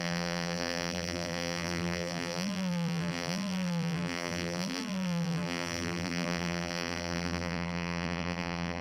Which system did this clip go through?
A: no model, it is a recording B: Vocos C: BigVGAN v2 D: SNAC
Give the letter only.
C